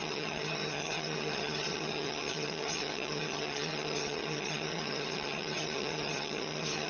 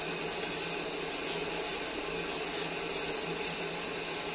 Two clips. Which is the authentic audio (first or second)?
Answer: second